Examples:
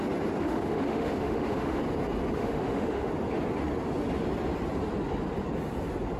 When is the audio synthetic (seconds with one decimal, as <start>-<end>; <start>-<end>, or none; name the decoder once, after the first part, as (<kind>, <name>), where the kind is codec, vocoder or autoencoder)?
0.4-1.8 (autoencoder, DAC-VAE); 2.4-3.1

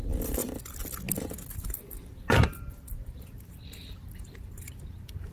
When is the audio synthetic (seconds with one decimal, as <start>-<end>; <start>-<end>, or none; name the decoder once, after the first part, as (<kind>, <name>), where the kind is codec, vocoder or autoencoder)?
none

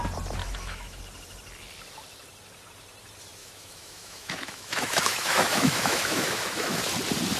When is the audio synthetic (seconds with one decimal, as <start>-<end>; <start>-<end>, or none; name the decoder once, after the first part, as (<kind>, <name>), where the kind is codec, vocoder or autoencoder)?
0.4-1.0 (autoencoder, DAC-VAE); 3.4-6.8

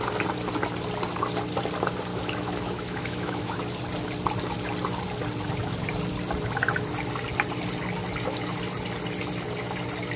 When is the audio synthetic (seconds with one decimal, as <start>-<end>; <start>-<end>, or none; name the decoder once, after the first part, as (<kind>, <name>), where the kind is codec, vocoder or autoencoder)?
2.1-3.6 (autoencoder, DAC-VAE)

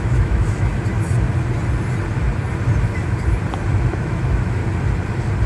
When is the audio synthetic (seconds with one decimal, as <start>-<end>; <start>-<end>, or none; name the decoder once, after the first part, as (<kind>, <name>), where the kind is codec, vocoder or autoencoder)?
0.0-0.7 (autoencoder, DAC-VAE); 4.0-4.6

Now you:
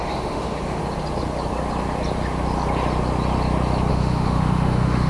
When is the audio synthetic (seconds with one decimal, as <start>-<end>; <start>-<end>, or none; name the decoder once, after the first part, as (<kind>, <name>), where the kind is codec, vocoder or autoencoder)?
0.0-0.8 (autoencoder, DAC-VAE); 3.9-5.1